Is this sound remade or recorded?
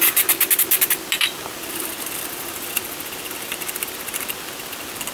remade